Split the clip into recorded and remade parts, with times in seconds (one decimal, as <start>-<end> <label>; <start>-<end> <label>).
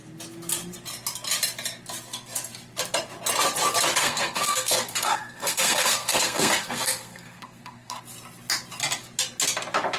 0.0-4.0 recorded; 4.0-8.0 remade; 8.0-10.0 recorded